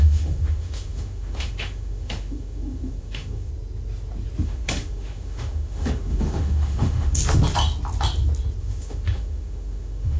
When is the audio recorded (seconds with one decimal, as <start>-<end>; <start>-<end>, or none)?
3.5-4.4; 7.2-8.6